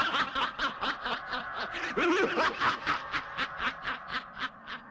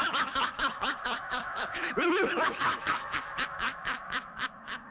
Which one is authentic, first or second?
first